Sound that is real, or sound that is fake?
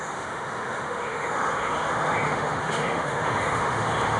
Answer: fake